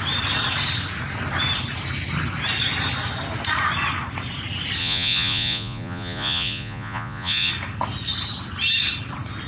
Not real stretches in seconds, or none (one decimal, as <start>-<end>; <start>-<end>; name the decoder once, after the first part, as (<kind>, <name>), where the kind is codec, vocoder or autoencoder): 4.8-7.5 (vocoder, Vocos)